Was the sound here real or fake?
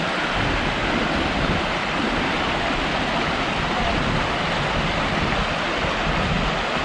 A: real